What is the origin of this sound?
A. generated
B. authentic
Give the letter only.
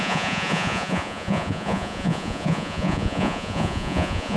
A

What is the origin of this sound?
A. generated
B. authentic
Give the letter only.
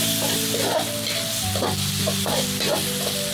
B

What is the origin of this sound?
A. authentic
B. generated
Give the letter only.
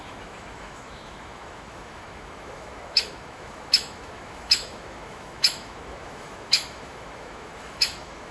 B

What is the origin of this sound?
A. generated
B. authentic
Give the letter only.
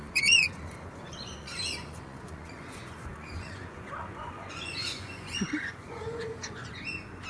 A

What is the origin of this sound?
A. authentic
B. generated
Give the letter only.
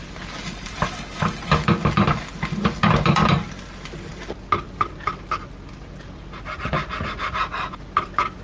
A